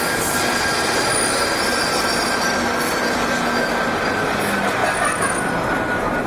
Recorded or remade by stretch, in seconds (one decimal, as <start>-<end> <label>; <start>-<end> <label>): 0.0-6.3 recorded